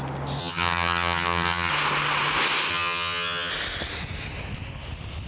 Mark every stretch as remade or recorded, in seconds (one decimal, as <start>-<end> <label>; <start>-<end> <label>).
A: 0.0-0.4 recorded; 0.4-1.7 remade; 1.7-2.7 recorded; 2.7-3.5 remade; 3.5-5.3 recorded